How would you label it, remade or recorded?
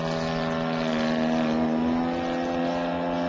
recorded